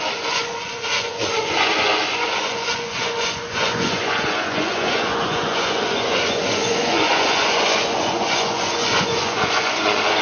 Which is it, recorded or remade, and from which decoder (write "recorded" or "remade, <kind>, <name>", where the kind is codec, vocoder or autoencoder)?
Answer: remade, vocoder, Vocos